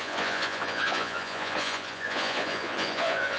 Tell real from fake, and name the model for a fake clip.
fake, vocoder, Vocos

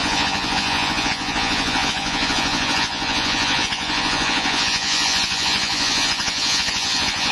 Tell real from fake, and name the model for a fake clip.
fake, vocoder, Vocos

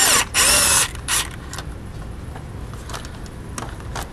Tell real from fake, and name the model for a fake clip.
real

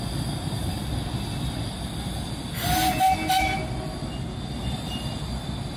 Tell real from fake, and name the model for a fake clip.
real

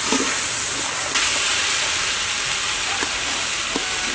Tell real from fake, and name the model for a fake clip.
real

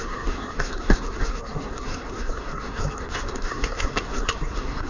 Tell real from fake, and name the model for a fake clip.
fake, codec, SNAC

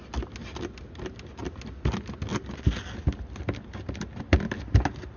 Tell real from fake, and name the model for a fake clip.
real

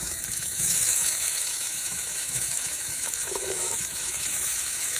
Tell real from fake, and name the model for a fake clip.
fake, autoencoder, DAC-VAE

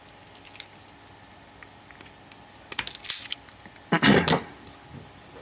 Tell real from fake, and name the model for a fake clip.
real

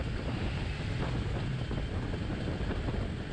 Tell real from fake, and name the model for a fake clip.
real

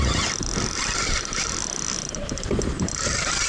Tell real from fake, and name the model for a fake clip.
real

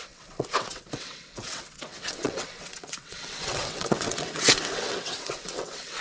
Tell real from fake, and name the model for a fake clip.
fake, vocoder, WaveNeXt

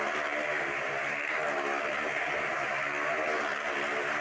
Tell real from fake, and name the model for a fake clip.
real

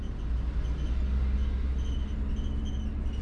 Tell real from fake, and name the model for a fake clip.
real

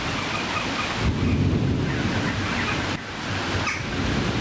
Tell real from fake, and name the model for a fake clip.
real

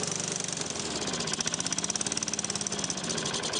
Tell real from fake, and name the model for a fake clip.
real